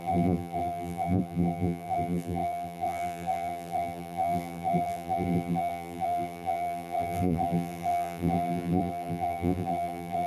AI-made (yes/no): yes